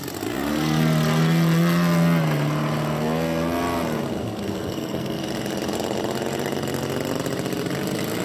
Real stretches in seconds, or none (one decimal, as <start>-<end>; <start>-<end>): 0.0-4.2; 5.2-8.2